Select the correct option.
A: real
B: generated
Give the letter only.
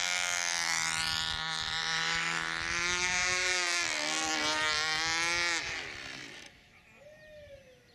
A